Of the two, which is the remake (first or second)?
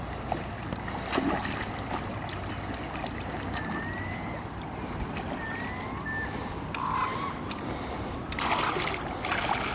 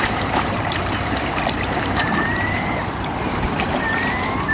second